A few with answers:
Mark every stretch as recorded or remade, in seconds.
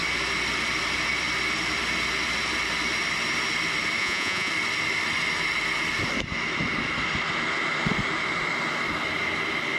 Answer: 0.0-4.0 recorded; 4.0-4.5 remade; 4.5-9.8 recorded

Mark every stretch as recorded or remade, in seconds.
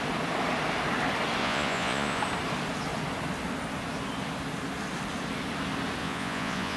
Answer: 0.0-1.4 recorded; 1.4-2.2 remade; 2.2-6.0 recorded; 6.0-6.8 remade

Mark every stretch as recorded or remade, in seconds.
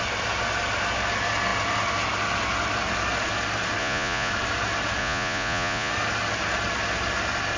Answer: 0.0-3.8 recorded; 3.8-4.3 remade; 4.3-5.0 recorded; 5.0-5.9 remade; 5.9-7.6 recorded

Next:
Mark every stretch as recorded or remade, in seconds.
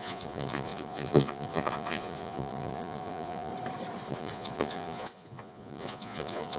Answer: 0.0-3.5 remade; 3.5-4.1 recorded; 4.1-6.6 remade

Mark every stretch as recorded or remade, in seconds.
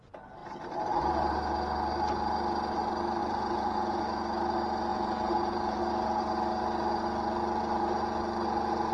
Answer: 0.0-3.2 recorded; 3.2-4.0 remade; 4.0-4.9 recorded; 4.9-5.8 remade; 5.8-8.9 recorded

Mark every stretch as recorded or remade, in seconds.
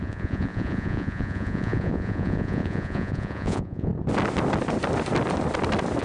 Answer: 0.0-3.9 remade; 3.9-6.0 recorded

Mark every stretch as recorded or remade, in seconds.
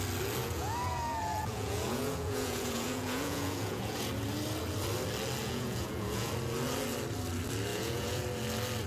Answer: 0.0-0.4 recorded; 0.4-4.1 remade; 4.1-5.4 recorded; 5.4-6.3 remade; 6.3-7.7 recorded; 7.7-8.2 remade; 8.2-8.9 recorded